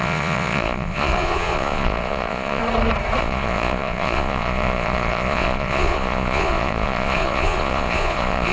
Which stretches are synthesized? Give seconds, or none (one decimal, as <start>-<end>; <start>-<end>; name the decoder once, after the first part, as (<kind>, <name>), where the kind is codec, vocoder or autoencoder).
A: 0.0-2.6 (vocoder, Vocos); 3.2-8.5